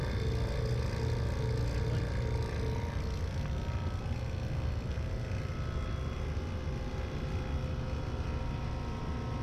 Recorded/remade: recorded